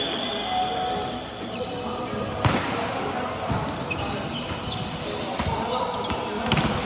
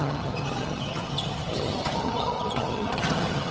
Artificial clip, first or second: second